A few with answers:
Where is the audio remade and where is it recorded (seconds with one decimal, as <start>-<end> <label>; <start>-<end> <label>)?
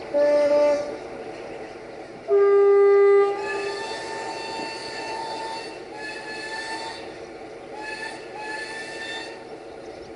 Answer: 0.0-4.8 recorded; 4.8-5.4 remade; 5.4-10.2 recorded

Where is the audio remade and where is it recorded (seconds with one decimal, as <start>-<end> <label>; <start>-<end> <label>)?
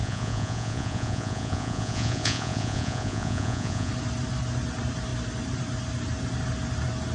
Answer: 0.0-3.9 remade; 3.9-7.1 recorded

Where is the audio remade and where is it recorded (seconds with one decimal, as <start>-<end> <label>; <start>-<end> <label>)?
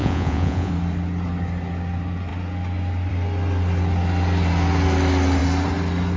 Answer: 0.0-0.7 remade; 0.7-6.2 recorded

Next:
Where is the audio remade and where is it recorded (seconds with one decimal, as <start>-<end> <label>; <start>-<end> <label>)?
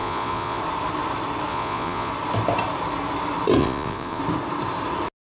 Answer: 0.0-0.6 remade; 0.6-1.5 recorded; 1.5-2.1 remade; 2.1-3.6 recorded; 3.6-4.2 remade; 4.2-5.3 recorded